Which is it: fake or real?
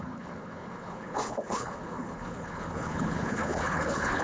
fake